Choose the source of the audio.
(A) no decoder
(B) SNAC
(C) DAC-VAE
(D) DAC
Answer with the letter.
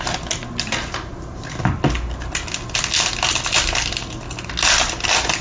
A